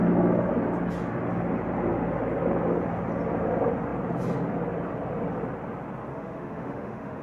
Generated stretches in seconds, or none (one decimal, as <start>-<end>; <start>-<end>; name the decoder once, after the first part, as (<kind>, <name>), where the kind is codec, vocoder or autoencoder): 6.1-7.2 (autoencoder, DAC-VAE)